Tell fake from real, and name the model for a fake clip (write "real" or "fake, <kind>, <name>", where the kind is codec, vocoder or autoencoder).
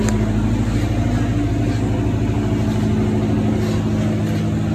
real